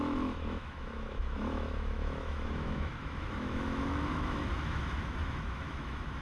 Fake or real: fake